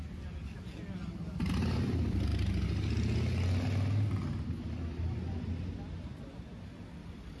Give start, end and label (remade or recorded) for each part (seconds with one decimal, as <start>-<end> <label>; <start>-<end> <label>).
0.0-7.4 recorded